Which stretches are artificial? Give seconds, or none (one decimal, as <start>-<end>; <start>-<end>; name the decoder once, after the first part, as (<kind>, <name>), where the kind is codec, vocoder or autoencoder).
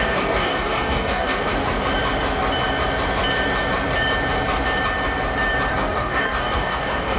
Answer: 0.0-1.5 (codec, DAC); 5.7-7.2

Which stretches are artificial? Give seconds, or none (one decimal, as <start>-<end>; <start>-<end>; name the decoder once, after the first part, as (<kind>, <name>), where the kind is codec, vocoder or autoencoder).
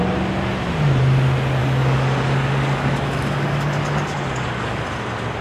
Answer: 1.6-4.8 (codec, DAC)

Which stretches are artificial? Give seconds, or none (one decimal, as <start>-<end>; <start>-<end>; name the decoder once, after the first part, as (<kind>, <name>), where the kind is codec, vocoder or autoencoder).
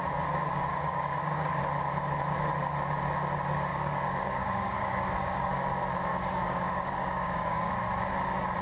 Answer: 0.7-1.6 (codec, DAC); 3.7-5.5; 6.1-7.7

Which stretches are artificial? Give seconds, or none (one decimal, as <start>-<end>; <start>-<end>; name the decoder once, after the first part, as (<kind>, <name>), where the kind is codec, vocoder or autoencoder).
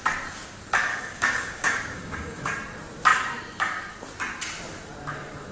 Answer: 0.9-2.5 (codec, DAC)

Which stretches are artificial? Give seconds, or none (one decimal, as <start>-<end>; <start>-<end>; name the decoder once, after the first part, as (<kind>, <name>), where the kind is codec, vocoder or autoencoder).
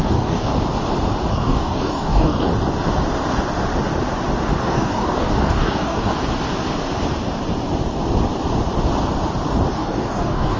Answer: 0.0-0.5 (codec, DAC); 1.3-2.5; 4.6-6.1; 9.7-10.6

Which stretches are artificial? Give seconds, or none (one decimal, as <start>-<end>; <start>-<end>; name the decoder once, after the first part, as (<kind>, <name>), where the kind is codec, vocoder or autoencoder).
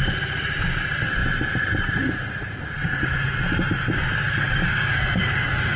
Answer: 4.5-5.8 (codec, DAC)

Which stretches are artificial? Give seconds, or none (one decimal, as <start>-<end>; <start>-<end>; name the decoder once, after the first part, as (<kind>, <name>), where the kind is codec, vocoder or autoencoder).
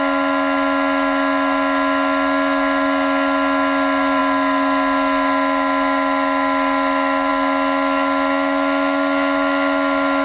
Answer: none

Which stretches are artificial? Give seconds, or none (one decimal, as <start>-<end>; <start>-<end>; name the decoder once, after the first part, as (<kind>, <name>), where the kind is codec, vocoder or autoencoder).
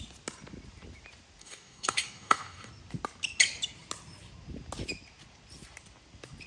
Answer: 1.4-2.7 (codec, DAC)